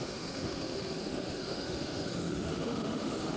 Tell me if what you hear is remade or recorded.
remade